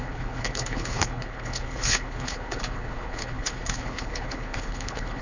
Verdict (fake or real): fake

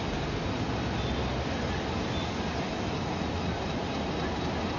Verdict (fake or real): real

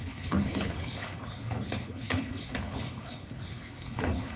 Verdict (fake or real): fake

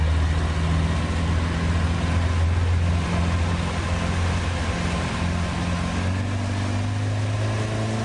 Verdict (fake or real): real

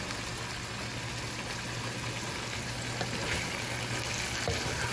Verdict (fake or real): real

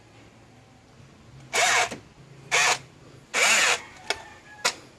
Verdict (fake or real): real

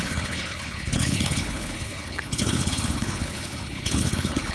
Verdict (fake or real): fake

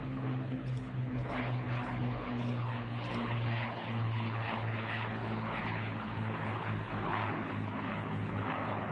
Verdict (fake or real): fake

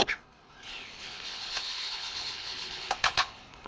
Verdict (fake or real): fake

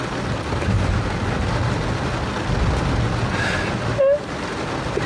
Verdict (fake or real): real